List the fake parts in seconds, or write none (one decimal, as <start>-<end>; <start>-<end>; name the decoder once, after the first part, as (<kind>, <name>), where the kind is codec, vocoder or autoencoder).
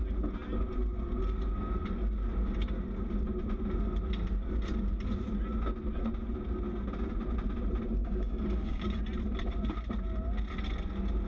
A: 8.0-9.0 (codec, DAC)